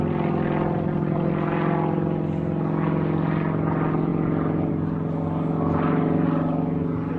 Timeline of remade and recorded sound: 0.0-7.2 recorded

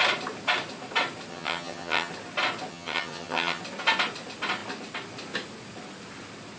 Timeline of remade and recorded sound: 0.0-1.3 recorded; 1.3-2.1 remade; 2.1-2.7 recorded; 2.7-3.6 remade; 3.6-6.6 recorded

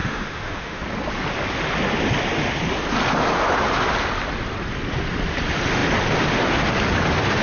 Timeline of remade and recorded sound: 0.0-0.8 remade; 0.8-7.4 recorded

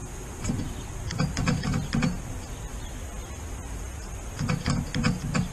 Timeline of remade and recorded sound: 0.0-0.9 recorded; 0.9-2.7 remade; 2.7-5.5 recorded

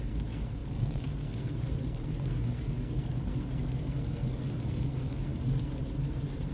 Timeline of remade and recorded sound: 0.0-6.5 remade

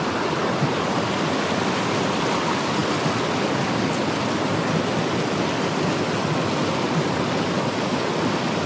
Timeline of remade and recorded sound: 0.0-0.4 recorded; 0.4-1.0 remade; 1.0-8.7 recorded